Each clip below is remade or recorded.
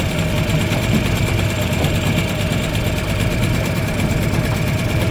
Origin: recorded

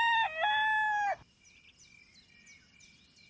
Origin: recorded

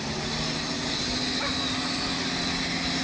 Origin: recorded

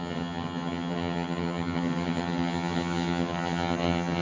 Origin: remade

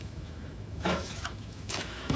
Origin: remade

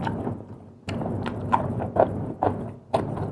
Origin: recorded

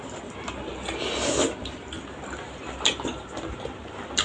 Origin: remade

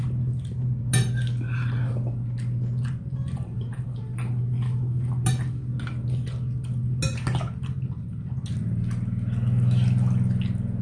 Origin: recorded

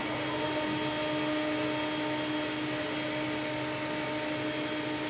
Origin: recorded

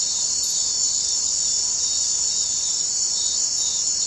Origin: recorded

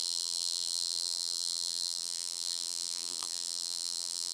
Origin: remade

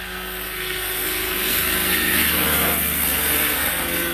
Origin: remade